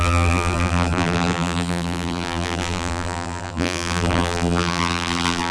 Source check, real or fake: fake